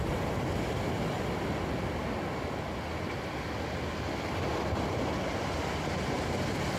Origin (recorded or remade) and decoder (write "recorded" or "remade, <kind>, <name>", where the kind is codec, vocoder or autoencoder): recorded